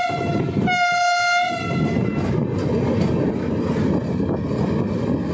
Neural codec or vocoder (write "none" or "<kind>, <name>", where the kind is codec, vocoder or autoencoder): none